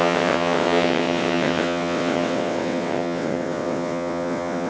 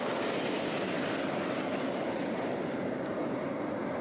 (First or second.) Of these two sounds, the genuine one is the second